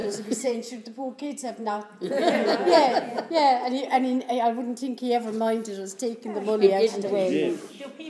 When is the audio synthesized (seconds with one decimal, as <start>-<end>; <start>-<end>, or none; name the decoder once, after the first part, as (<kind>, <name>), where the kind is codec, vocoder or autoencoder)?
0.0-3.3 (vocoder, Vocos)